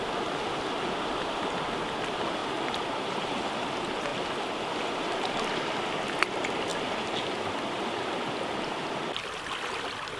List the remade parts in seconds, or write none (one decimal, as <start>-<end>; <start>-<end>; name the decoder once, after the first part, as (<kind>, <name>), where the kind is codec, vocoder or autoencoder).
none